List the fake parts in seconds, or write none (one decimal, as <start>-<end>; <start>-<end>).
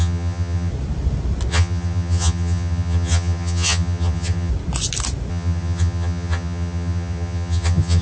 0.0-0.7; 1.5-4.5; 5.3-8.0